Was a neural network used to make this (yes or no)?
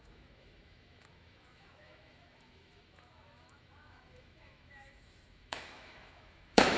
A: yes